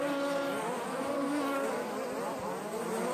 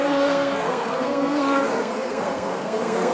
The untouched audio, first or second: first